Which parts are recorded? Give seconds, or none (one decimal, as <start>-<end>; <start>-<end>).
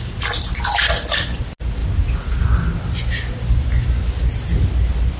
0.0-5.2